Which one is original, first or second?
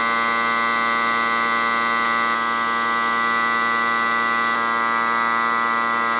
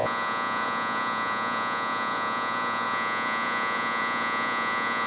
first